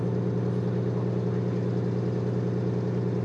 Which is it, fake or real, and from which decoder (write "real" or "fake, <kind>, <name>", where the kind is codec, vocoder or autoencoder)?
real